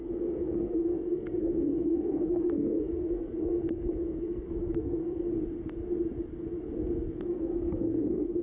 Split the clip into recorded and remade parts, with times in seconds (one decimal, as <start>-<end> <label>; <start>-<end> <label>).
0.0-5.3 remade; 5.3-7.2 recorded; 7.2-8.4 remade